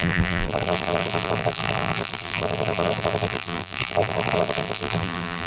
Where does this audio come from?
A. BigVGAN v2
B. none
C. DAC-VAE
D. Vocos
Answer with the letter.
A